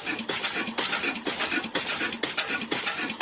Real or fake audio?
real